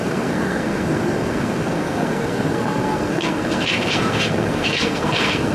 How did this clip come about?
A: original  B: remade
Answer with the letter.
B